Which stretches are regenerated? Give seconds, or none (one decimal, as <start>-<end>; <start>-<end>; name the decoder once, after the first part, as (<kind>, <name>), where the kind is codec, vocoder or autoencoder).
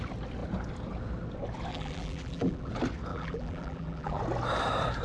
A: 1.7-2.7 (vocoder, BigVGAN v2); 3.1-4.2